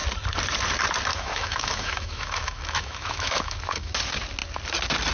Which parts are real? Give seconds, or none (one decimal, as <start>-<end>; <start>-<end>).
0.0-1.1; 3.9-5.1

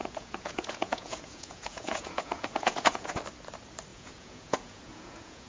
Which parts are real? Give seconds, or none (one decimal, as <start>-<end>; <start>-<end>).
3.2-3.9

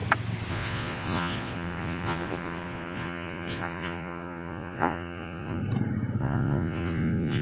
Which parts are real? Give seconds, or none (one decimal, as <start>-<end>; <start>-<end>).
0.0-0.5; 5.6-6.2

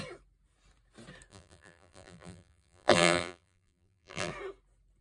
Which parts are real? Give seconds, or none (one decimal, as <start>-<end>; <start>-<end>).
0.0-1.3; 4.3-5.0